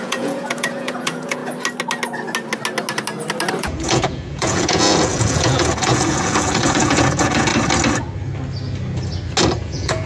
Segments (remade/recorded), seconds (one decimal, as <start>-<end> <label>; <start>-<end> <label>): 0.0-1.4 remade; 1.4-3.6 recorded; 3.6-7.5 remade; 7.5-9.6 recorded; 9.6-10.1 remade